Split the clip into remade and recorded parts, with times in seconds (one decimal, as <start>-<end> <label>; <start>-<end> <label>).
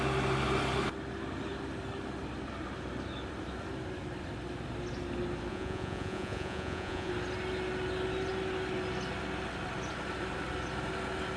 0.0-5.5 recorded; 5.5-7.1 remade; 7.1-11.4 recorded